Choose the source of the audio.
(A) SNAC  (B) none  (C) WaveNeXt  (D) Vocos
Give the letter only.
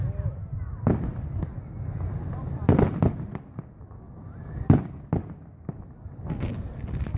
B